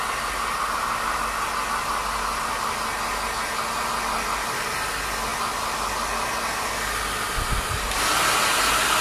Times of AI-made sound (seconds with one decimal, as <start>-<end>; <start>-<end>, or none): none